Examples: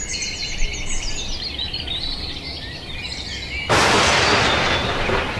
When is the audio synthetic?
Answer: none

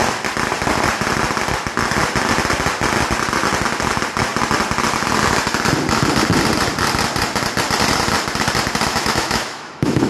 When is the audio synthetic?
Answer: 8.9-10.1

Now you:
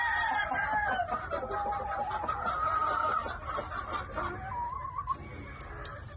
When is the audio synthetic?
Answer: none

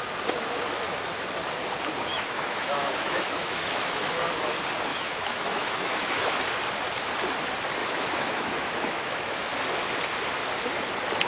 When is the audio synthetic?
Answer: 2.1-4.1; 4.9-6.4; 7.8-9.5

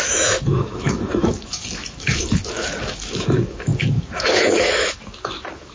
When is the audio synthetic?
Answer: 0.0-5.7